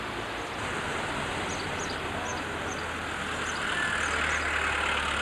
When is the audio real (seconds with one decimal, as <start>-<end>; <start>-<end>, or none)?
0.0-5.2